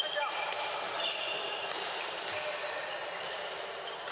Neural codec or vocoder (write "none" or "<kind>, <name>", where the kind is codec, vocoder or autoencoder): none